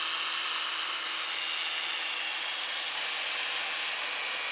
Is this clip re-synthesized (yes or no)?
no